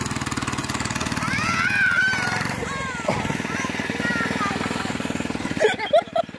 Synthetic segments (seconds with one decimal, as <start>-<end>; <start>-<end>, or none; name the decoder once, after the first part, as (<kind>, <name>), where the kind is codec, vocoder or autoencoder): none